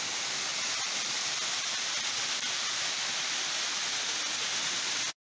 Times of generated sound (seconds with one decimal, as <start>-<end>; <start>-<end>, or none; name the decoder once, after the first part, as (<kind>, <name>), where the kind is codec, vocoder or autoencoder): 0.5-3.4 (vocoder, BigVGAN v2)